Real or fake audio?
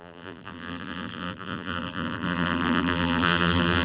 fake